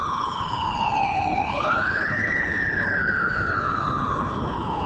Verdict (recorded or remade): remade